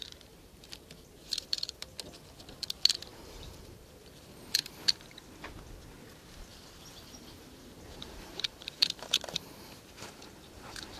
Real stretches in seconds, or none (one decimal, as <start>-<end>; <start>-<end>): 1.9-3.1; 5.0-6.5